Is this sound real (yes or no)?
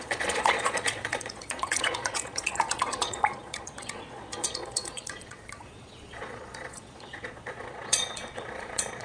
no